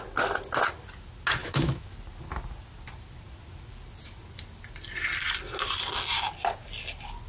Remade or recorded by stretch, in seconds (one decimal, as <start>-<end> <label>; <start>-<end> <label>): 0.0-1.4 recorded; 1.4-1.9 remade; 1.9-7.3 recorded